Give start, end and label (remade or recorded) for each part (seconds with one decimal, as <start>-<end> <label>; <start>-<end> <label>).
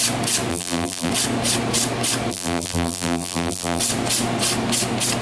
0.0-0.5 recorded; 0.5-1.1 remade; 1.1-2.3 recorded; 2.3-3.8 remade; 3.8-5.2 recorded